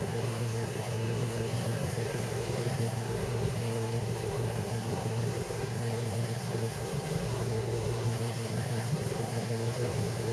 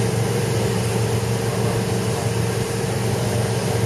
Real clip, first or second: second